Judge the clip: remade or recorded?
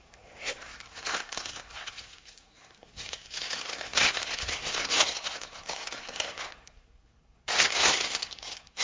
remade